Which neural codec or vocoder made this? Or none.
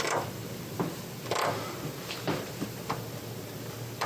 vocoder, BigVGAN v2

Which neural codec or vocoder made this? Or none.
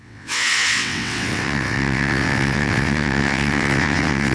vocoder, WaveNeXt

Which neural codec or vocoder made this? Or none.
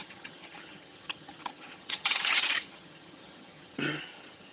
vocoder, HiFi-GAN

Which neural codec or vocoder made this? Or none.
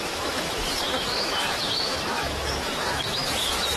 autoencoder, DAC-VAE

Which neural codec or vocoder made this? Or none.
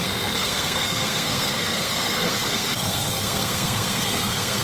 codec, SNAC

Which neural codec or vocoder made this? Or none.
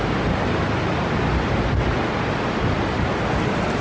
none